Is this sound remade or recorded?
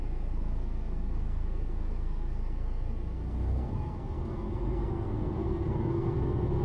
remade